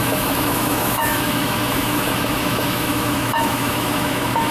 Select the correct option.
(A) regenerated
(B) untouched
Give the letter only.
A